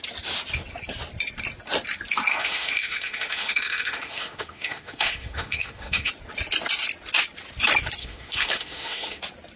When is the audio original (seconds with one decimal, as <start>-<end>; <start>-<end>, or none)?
0.0-2.3; 6.1-8.0; 9.2-9.6